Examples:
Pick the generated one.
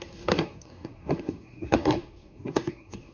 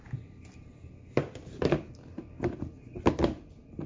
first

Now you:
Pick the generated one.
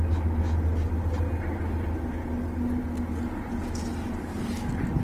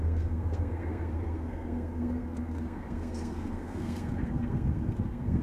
second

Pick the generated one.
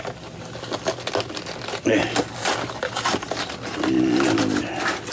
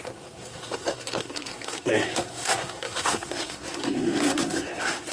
second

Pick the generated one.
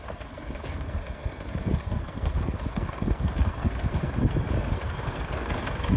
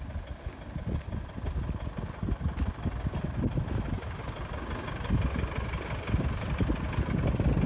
first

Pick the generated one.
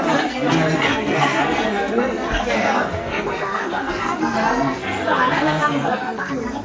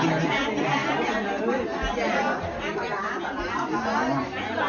first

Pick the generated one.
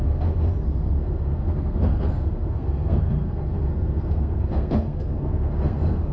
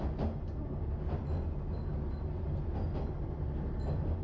first